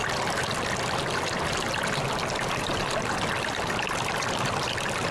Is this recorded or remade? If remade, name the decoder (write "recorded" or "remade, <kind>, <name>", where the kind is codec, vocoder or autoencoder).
recorded